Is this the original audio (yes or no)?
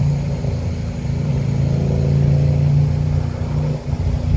yes